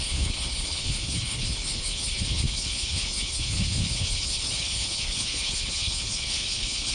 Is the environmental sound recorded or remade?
remade